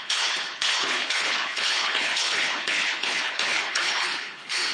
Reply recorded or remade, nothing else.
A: remade